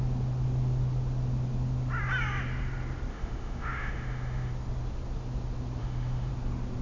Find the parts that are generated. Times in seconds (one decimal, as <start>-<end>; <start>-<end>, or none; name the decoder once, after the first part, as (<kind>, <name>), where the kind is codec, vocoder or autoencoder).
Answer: 3.1-4.5 (autoencoder, DAC-VAE); 5.8-6.3